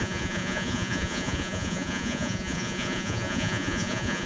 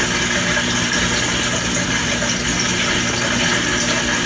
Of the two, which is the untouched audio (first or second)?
second